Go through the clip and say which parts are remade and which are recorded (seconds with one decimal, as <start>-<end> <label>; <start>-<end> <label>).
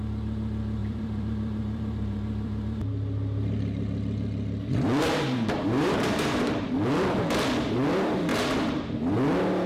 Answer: 0.0-0.8 recorded; 0.8-2.9 remade; 2.9-5.0 recorded; 5.0-6.9 remade; 6.9-8.3 recorded; 8.3-9.0 remade; 9.0-9.7 recorded